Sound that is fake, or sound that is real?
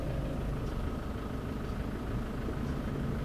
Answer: real